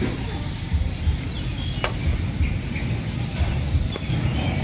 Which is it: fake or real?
real